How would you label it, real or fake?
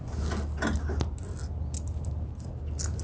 real